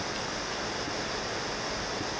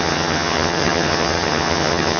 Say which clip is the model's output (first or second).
second